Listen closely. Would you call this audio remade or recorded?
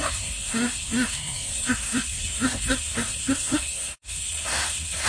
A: remade